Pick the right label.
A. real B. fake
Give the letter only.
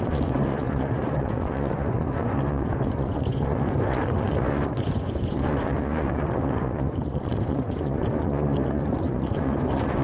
B